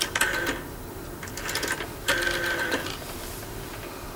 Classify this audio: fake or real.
real